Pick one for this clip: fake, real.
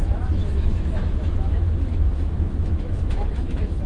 fake